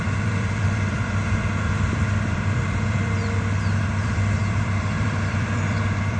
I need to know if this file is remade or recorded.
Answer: remade